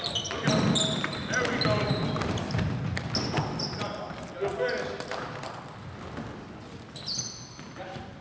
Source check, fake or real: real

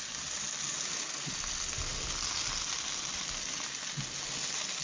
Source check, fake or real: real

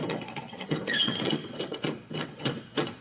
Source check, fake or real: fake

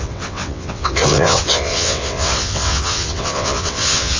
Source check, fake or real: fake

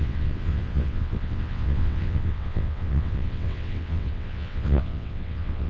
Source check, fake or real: fake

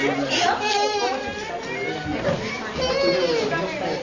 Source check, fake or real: real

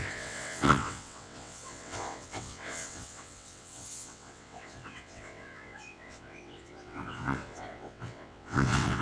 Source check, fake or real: fake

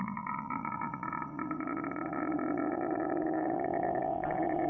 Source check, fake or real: fake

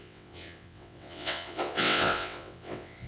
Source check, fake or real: fake